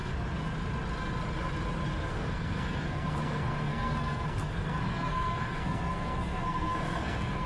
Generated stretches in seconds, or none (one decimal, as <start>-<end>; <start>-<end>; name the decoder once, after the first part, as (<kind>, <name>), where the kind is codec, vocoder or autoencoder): 2.1-7.5 (codec, SNAC)